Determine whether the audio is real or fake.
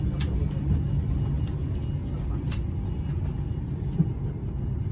real